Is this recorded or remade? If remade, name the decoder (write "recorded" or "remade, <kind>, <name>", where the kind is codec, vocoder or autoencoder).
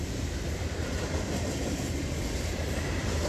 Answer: recorded